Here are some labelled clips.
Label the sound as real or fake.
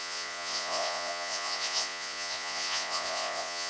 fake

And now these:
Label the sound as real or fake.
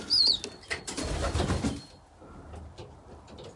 real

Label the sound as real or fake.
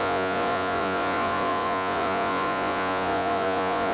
fake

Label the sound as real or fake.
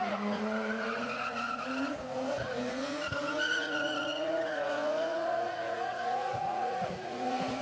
fake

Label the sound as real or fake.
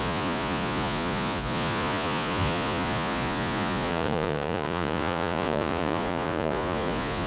fake